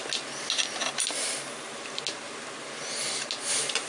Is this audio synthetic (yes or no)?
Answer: no